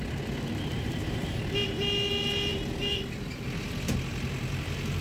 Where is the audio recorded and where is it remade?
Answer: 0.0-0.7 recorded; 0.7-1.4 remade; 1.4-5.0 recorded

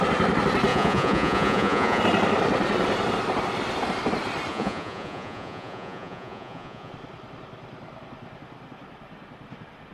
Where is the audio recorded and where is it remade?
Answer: 0.0-0.7 recorded; 0.7-2.0 remade; 2.0-4.5 recorded; 4.5-6.9 remade; 6.9-9.9 recorded